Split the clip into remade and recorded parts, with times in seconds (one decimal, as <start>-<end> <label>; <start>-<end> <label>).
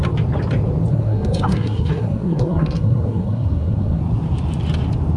0.0-0.9 recorded; 0.9-4.0 remade; 4.0-5.2 recorded